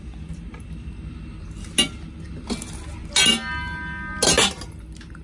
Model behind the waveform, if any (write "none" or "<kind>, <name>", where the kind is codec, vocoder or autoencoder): none